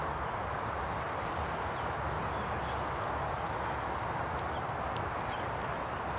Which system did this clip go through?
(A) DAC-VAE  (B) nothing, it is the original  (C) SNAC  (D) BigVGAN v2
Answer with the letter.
B